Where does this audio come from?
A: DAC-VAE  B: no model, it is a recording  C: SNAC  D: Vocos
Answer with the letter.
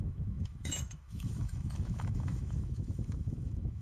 A